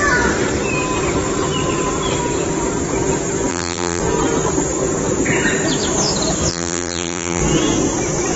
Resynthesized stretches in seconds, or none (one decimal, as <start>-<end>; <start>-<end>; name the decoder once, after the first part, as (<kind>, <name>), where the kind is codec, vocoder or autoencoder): 3.5-4.0 (vocoder, BigVGAN v2); 6.5-7.4